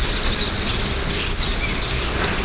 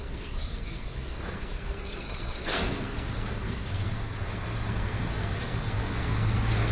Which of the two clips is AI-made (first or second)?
second